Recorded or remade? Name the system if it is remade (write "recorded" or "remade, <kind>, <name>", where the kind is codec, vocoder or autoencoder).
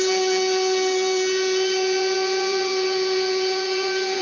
remade, vocoder, Vocos